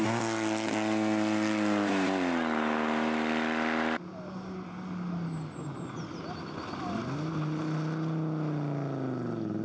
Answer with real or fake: real